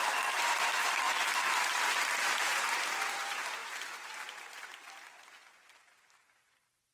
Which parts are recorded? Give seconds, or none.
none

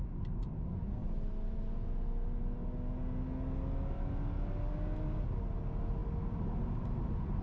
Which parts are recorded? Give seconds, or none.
0.0-7.4

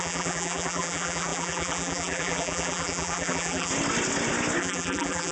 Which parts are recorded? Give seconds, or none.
3.7-4.6

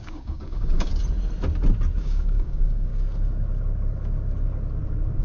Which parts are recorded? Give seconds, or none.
0.9-2.0; 2.9-5.2

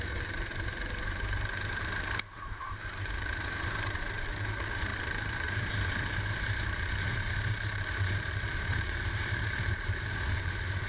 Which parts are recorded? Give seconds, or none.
none

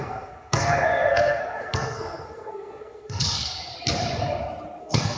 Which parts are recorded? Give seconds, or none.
3.7-4.8